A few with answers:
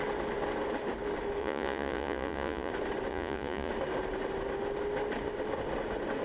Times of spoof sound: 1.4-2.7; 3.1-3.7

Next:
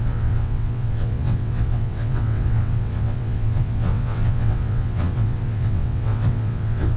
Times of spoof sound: 0.0-7.0

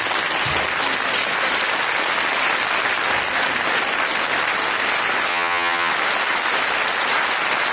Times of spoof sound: 5.3-5.9

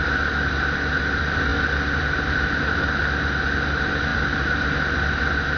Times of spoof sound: none

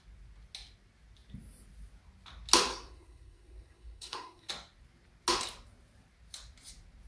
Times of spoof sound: 2.7-4.5